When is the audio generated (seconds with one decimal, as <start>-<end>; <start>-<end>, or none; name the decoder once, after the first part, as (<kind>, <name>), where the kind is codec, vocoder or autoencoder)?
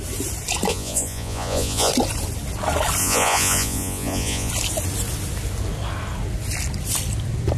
0.7-1.9 (vocoder, Vocos); 3.0-4.5